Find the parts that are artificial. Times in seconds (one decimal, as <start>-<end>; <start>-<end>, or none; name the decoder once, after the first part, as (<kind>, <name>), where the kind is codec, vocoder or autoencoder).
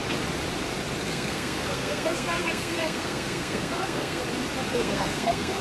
1.0-4.2 (codec, SNAC); 4.7-5.6